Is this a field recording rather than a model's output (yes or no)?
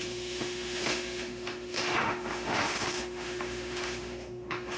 no